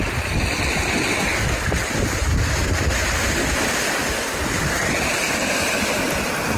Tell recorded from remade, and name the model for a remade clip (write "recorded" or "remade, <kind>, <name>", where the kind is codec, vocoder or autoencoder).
recorded